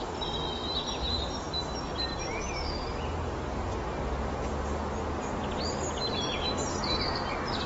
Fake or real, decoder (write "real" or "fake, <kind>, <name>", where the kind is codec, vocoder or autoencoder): real